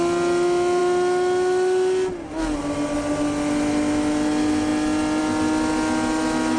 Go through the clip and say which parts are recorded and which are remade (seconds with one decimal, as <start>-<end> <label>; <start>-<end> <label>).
0.0-6.6 recorded